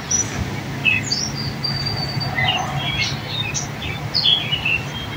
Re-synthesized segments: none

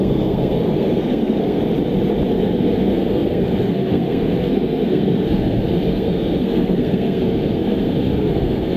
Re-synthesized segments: 0.0-1.6 (codec, SNAC); 2.3-8.8

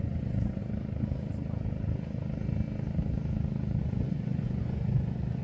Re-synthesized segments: 0.0-0.6 (vocoder, Vocos); 3.8-5.4

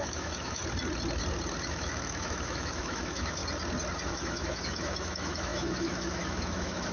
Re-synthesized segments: 0.0-0.6 (autoencoder, DAC-VAE); 1.7-3.4; 4.1-6.9

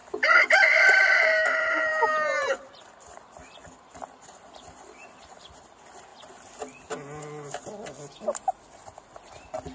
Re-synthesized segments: 0.0-6.1 (vocoder, BigVGAN v2); 7.2-9.7

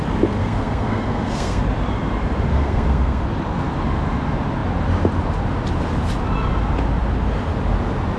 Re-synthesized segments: 0.4-1.6 (codec, SNAC); 2.5-3.2

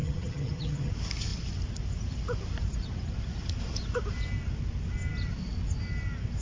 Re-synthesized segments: 0.0-0.9 (vocoder, HiFi-GAN)